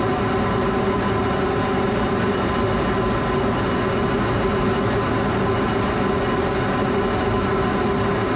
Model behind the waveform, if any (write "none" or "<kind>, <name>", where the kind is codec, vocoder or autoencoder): none